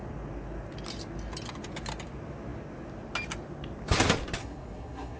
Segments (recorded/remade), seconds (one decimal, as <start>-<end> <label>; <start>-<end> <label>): 0.0-4.4 recorded; 4.4-5.2 remade